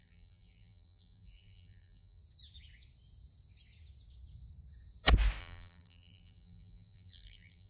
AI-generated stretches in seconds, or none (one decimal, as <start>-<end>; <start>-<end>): 0.0-2.2; 5.4-7.7

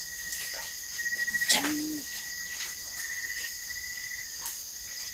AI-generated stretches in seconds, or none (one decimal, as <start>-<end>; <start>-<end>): none

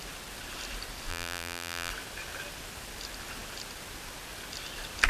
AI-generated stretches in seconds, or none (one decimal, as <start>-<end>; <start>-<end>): 1.1-1.9

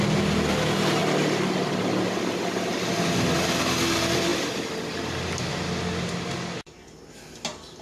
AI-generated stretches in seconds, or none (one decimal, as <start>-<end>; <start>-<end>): none

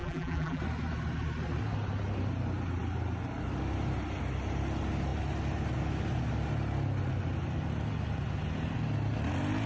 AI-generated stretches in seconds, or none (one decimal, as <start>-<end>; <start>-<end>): 0.0-0.6